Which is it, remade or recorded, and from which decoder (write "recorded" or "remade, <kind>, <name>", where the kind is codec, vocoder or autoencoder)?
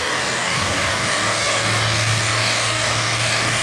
remade, codec, DAC